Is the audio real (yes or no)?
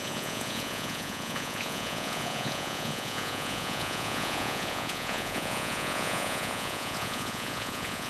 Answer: no